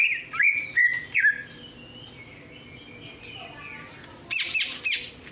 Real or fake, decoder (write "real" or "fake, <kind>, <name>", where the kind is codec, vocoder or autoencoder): real